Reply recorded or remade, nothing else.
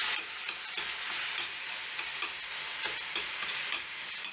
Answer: recorded